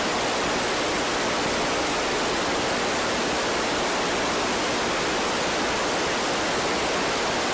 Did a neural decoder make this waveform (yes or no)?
no